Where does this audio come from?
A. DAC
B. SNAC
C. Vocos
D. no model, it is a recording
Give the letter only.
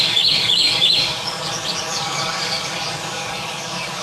A